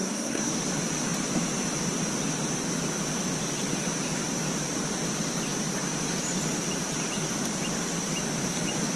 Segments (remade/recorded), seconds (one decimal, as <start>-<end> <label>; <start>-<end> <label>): 0.0-0.5 remade; 0.5-9.0 recorded